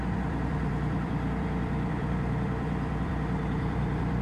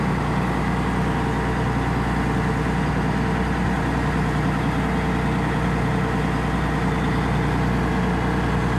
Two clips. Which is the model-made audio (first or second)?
first